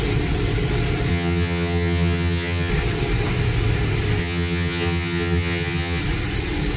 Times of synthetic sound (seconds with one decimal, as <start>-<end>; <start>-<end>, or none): 1.1-2.7; 4.2-6.0